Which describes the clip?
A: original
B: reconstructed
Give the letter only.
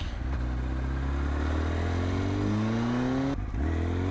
A